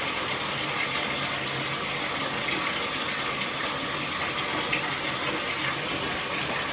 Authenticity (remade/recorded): recorded